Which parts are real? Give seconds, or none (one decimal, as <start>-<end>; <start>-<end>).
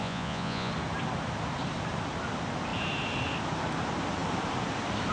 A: 0.7-5.1